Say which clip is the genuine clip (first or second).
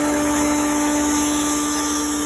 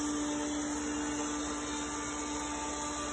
second